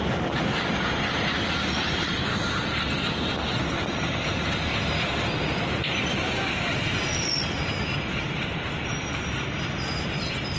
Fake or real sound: real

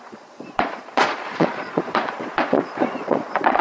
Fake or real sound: fake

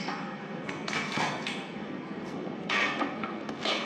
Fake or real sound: fake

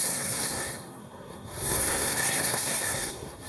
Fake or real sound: fake